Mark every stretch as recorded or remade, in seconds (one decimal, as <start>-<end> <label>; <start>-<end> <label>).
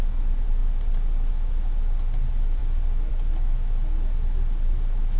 0.0-5.2 recorded